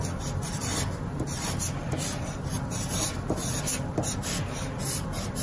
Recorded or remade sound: recorded